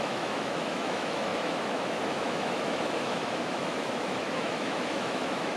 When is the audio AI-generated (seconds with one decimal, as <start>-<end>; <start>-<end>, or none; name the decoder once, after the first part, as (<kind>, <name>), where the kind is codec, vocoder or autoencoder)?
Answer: 0.0-5.6 (autoencoder, DAC-VAE)